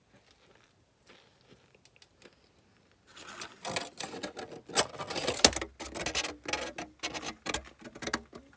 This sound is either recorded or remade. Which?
recorded